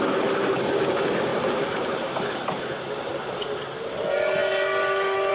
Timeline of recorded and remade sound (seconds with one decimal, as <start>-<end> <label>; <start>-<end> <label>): 0.0-1.3 recorded; 1.3-2.7 remade; 2.7-3.1 recorded; 3.1-3.9 remade; 3.9-5.3 recorded